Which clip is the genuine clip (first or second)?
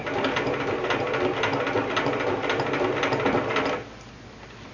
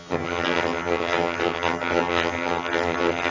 first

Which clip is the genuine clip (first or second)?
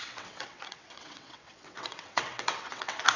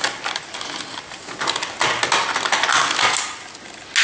second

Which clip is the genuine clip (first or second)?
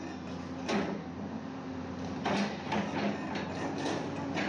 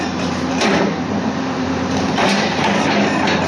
first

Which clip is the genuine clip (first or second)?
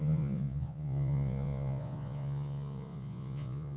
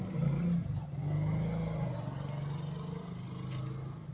second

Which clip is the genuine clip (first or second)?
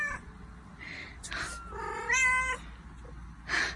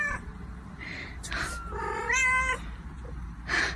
first